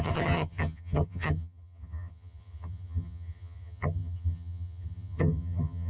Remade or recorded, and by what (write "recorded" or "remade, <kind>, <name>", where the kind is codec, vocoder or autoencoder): remade, vocoder, HiFi-GAN